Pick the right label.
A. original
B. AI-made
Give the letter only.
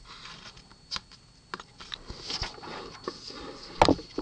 A